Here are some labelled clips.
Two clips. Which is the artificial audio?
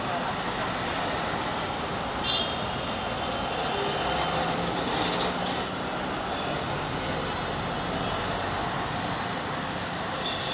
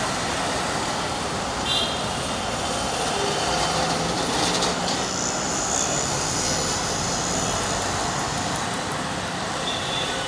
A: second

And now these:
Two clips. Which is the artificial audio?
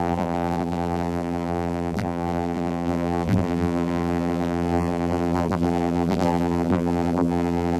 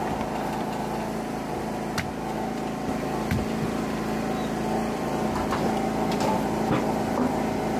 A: first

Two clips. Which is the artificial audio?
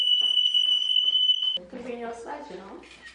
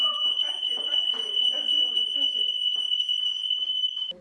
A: first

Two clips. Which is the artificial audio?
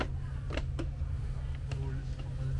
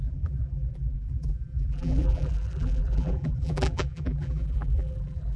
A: second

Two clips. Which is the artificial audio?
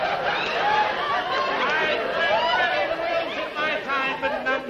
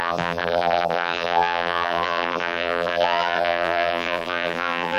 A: second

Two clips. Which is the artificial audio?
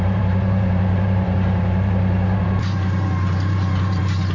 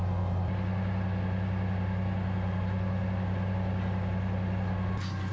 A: first